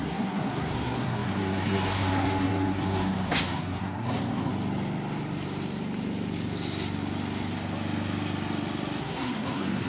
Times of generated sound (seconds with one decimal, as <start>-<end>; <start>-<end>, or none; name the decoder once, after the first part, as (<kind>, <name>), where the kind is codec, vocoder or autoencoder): 0.0-4.5 (codec, SNAC); 9.0-9.9